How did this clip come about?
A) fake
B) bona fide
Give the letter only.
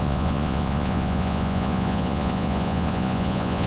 A